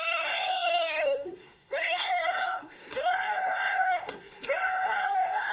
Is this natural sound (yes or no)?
no